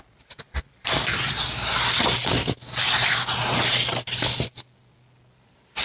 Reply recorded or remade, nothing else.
recorded